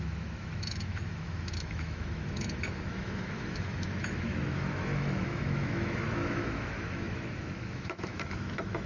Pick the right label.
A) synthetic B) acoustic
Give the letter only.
A